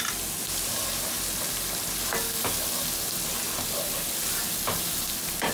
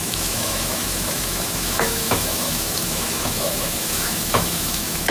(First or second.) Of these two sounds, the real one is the first